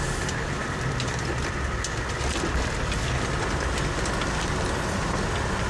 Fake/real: real